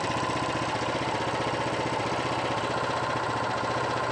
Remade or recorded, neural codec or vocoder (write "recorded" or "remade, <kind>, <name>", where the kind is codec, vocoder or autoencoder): recorded